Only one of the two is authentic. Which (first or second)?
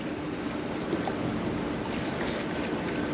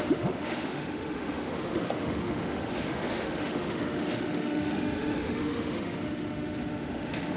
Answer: first